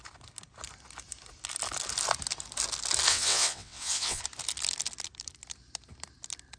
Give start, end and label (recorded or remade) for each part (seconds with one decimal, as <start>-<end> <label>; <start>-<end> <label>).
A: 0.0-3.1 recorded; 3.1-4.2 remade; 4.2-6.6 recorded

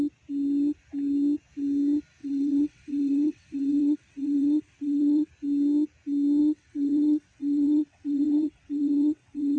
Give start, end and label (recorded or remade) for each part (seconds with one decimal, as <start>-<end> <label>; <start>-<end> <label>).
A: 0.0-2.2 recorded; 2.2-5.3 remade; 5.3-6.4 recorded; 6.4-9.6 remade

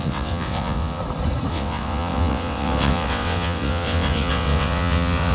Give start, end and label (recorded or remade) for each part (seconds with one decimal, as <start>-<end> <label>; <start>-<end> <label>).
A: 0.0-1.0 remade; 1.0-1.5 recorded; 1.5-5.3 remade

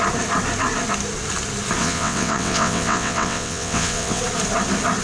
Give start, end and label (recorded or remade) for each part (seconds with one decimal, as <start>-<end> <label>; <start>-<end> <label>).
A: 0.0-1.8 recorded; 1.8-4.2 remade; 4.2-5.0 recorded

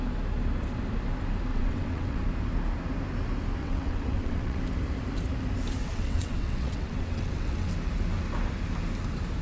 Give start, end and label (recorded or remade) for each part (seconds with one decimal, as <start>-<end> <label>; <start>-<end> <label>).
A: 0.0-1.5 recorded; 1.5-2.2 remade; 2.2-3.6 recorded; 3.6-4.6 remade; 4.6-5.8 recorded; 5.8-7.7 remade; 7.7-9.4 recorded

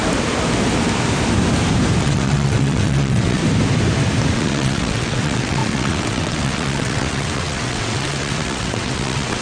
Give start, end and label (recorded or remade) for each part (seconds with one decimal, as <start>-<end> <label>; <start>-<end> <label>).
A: 0.0-2.0 recorded; 2.0-3.4 remade; 3.4-4.3 recorded; 4.3-9.4 remade

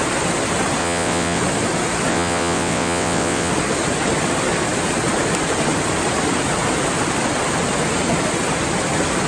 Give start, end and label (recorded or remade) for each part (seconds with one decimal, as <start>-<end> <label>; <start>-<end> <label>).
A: 0.0-0.8 recorded; 0.8-1.4 remade; 1.4-2.1 recorded; 2.1-3.5 remade; 3.5-9.3 recorded